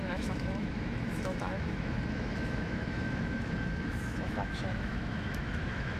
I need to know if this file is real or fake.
fake